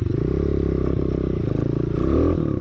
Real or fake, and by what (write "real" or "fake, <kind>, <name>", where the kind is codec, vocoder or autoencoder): real